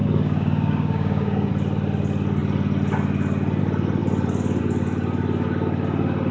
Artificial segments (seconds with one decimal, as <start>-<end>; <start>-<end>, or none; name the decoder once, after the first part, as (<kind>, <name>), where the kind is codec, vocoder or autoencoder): 0.0-1.5 (codec, DAC)